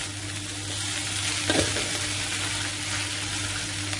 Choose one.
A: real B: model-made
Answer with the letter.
A